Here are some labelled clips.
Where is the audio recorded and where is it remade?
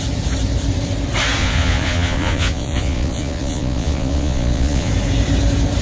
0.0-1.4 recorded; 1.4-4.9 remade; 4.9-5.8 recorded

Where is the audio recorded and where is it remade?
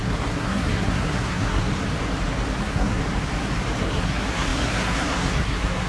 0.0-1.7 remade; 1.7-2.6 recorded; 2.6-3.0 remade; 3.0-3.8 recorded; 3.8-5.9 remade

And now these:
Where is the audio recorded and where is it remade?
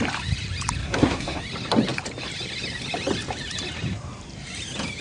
0.0-0.8 recorded; 0.8-1.4 remade; 1.4-5.0 recorded